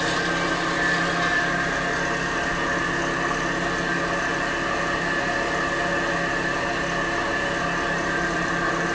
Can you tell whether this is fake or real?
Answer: real